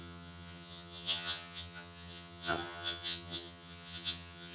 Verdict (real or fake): fake